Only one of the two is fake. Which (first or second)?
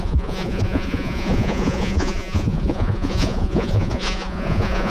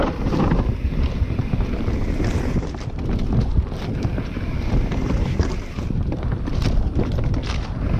first